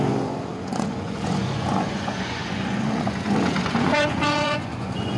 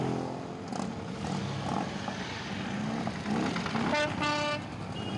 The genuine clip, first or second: second